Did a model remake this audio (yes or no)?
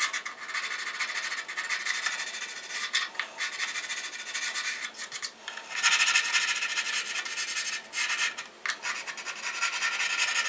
no